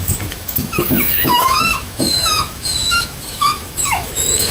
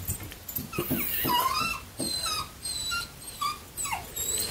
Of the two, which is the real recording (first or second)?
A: second